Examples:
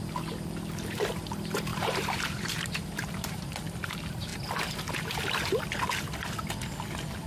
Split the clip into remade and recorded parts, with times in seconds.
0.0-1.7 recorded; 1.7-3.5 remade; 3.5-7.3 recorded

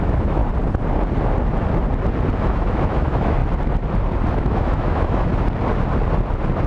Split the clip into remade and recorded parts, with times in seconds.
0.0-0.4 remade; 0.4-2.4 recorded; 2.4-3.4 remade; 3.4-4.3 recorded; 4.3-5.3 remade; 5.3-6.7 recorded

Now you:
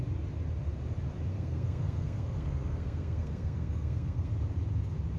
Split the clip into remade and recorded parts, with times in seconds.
0.0-1.3 recorded; 1.3-4.3 remade; 4.3-5.2 recorded

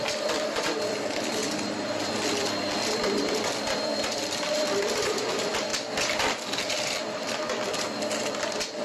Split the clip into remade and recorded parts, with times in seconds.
0.0-5.7 remade; 5.7-6.6 recorded; 6.6-8.8 remade

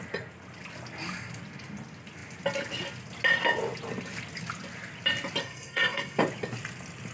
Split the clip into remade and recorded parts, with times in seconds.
0.0-5.4 recorded; 5.4-6.2 remade; 6.2-7.1 recorded

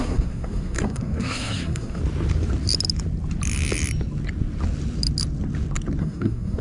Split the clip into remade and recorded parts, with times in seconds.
0.0-2.0 remade; 2.0-6.0 recorded; 6.0-6.6 remade